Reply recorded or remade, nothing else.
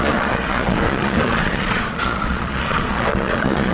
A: remade